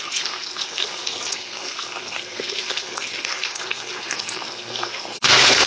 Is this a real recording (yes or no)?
no